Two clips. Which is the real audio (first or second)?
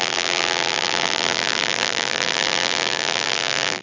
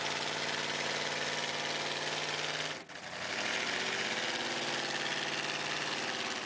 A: second